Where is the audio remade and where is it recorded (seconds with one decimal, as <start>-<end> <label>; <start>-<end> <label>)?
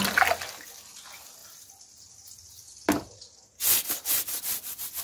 0.0-5.0 recorded